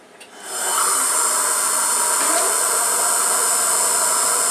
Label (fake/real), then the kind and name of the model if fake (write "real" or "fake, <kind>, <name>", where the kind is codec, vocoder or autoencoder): fake, vocoder, BigVGAN v2